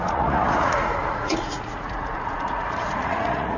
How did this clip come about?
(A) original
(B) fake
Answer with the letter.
B